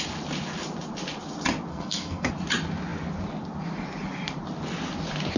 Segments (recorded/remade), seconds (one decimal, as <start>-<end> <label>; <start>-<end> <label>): 0.0-1.7 recorded; 1.7-2.3 remade; 2.3-5.4 recorded